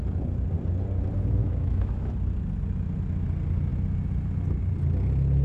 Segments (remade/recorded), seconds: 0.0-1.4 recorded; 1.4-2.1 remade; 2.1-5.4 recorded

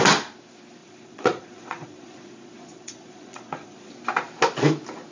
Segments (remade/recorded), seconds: 0.0-0.8 recorded; 0.8-3.9 remade; 3.9-5.1 recorded

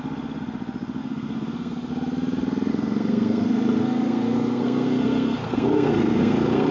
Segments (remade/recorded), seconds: 0.0-1.0 recorded; 1.0-1.9 remade; 1.9-2.7 recorded; 2.7-6.7 remade

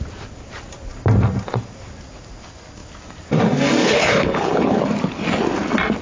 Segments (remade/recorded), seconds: 0.0-3.8 recorded; 3.8-4.8 remade; 4.8-6.0 recorded